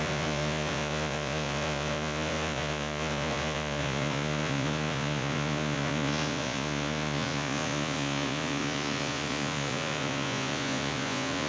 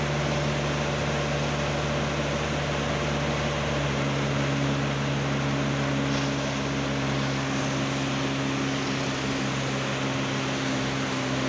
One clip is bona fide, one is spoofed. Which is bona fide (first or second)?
second